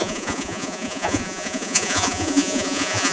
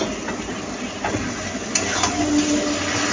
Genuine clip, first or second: second